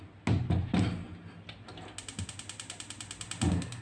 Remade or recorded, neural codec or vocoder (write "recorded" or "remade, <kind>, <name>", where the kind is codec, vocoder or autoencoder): recorded